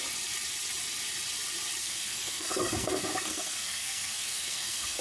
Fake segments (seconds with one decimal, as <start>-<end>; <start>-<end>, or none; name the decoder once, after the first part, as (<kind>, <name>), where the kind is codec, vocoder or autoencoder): 1.8-5.0 (codec, SNAC)